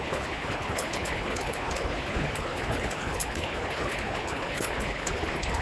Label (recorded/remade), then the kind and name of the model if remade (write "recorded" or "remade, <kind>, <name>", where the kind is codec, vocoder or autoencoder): remade, codec, HILCodec